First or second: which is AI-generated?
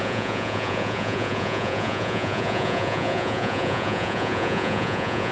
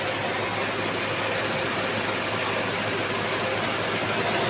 first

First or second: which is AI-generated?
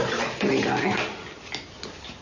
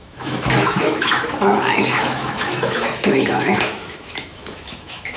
second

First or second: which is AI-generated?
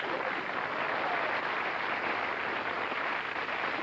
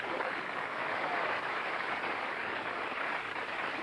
second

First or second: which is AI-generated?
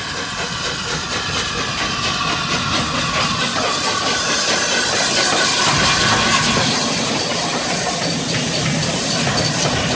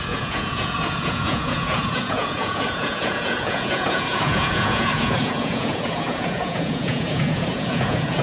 second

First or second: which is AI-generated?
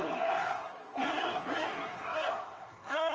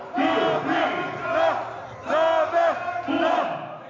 first